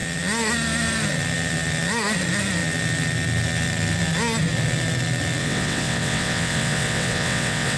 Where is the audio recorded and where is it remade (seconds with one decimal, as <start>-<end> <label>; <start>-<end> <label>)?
0.0-5.4 recorded; 5.4-7.8 remade